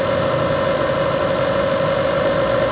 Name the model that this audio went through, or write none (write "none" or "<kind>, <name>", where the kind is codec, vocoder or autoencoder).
none